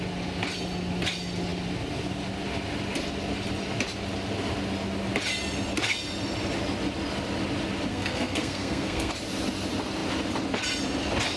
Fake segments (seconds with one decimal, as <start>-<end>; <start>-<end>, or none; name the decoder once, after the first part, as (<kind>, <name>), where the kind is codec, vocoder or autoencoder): 7.9-9.1 (codec, SNAC)

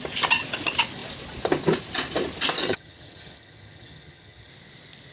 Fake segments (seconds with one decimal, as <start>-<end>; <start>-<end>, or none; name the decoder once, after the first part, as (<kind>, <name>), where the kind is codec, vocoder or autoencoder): 2.6-4.5 (vocoder, HiFi-GAN)

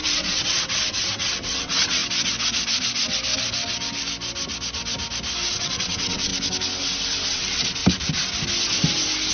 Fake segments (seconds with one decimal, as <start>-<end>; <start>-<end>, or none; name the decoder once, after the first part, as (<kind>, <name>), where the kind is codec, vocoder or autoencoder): 0.0-2.0 (vocoder, WaveNeXt); 5.5-6.3; 7.3-7.8

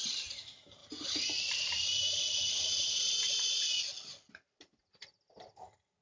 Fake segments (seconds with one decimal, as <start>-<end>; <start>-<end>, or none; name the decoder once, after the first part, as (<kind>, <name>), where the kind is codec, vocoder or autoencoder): 0.8-2.9 (vocoder, BigVGAN v2)

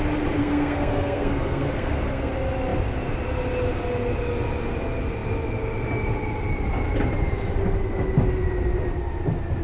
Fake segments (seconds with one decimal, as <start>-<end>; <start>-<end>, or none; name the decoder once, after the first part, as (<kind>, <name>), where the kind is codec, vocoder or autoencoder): 0.4-2.3 (codec, SNAC)